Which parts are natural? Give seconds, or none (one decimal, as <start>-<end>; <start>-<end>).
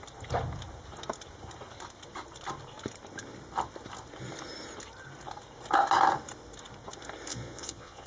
0.0-7.3